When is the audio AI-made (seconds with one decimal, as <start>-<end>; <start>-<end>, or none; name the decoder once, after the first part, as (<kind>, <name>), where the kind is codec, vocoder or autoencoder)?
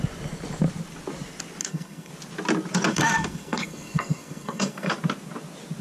1.6-2.1 (codec, SNAC); 2.9-4.9